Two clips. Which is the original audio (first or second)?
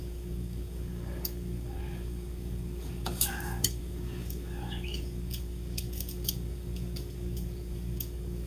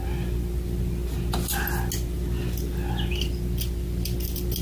second